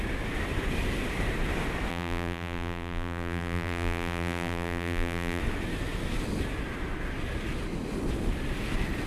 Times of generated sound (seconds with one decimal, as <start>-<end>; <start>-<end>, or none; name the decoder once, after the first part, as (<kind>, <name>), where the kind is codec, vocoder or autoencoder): 1.9-5.4 (vocoder, BigVGAN v2)